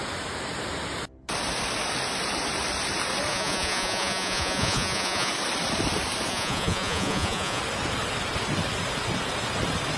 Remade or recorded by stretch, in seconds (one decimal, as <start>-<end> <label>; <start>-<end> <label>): 0.0-3.3 recorded; 3.3-5.3 remade; 5.3-6.3 recorded; 6.3-7.6 remade; 7.6-10.0 recorded